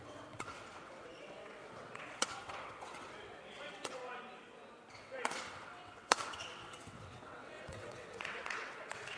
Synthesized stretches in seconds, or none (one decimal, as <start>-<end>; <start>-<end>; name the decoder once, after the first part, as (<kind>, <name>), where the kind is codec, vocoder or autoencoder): 0.0-4.0 (vocoder, WaveNeXt); 4.9-9.2

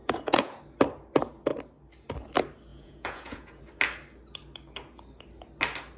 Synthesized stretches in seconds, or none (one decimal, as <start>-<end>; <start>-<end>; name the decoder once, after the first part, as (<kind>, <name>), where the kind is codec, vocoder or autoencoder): 0.0-0.6 (vocoder, Vocos); 2.7-3.6

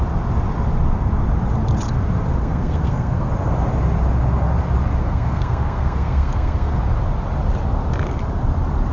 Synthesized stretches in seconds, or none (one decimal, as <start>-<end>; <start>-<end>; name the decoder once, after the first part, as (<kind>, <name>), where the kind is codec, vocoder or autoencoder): 2.4-3.3 (codec, SNAC); 5.0-6.8

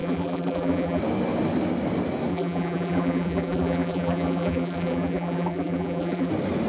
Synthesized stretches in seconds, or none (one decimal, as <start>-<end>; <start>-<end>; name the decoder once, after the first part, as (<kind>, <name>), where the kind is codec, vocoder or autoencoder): 0.0-1.0 (vocoder, BigVGAN v2); 2.3-6.3

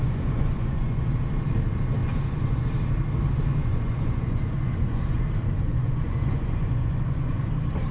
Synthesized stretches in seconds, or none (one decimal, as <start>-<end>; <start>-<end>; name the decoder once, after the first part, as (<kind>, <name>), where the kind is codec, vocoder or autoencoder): 0.0-1.0 (vocoder, Vocos); 2.0-2.7; 3.6-5.2; 5.7-7.5

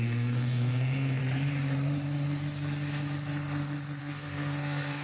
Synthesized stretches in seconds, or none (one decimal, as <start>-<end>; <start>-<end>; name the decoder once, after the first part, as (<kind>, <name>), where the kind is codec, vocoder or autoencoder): 0.0-1.2 (codec, SNAC); 4.0-5.0

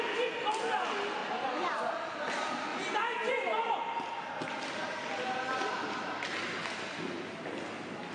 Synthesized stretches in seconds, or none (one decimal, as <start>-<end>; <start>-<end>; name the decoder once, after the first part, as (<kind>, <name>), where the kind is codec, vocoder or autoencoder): none